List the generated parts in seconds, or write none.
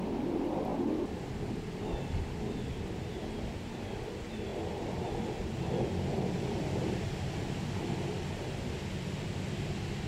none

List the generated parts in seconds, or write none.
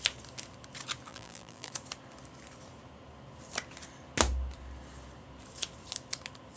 1.1-1.7